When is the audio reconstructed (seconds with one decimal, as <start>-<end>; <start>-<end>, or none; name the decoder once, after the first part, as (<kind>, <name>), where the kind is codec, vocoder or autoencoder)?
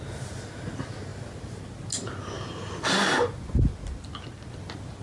none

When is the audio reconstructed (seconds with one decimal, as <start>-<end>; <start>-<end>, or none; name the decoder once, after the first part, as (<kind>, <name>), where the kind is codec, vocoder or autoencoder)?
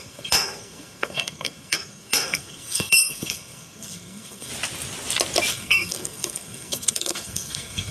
0.0-4.5 (codec, SNAC); 5.5-7.9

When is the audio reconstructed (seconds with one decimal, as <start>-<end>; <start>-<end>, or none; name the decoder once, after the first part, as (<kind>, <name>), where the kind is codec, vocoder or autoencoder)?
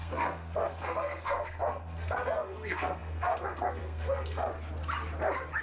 0.0-4.5 (codec, SNAC)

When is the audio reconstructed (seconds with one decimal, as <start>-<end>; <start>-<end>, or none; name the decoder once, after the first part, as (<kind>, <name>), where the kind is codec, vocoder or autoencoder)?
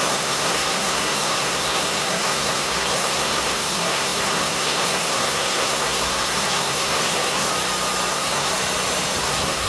0.0-7.5 (codec, SNAC); 8.1-8.5; 9.2-9.7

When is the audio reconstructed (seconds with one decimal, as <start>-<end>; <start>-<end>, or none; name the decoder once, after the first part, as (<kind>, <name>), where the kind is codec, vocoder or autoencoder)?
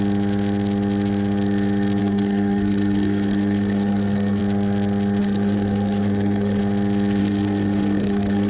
2.0-4.4 (codec, SNAC); 5.2-6.6; 7.2-8.5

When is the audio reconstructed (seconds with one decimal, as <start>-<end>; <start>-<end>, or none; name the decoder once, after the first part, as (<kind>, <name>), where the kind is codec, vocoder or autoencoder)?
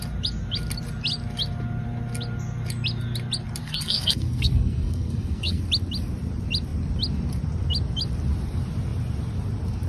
3.6-5.6 (codec, SNAC)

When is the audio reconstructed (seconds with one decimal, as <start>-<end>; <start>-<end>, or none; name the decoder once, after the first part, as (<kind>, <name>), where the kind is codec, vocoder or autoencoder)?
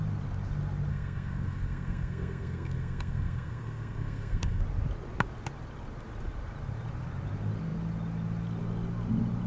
0.9-4.6 (codec, SNAC)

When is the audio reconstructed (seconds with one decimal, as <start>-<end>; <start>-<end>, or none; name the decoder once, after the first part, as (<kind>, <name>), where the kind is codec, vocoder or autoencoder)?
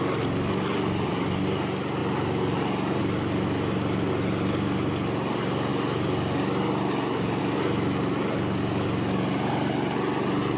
none